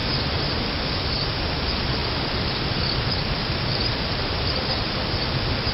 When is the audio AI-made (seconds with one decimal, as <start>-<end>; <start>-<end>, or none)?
0.0-0.6; 2.0-5.7